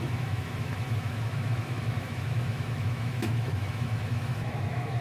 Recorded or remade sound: remade